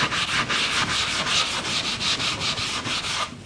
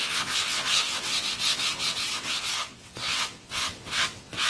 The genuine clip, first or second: first